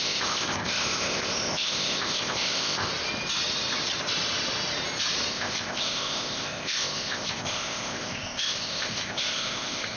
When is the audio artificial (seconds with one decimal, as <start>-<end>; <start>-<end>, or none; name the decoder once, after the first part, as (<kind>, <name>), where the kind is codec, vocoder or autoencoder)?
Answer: 0.0-2.9 (codec, ZipCodec); 5.3-10.0